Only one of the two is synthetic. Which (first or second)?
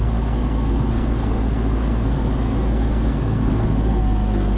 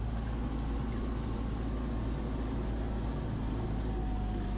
first